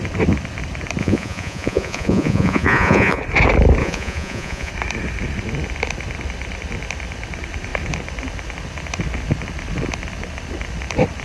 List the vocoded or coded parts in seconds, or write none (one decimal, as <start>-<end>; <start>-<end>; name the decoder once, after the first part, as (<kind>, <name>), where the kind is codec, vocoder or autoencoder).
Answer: 1.0-3.2 (vocoder, Vocos); 3.8-4.7